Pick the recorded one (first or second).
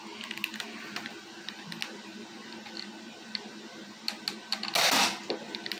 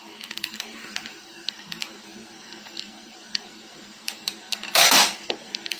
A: first